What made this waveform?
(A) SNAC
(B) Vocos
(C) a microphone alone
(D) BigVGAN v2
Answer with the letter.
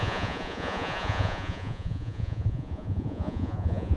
B